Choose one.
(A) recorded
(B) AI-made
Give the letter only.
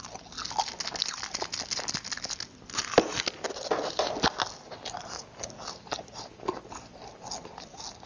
A